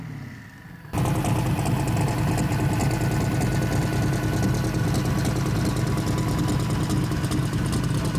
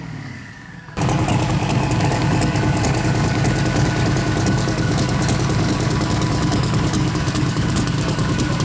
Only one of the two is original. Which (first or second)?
first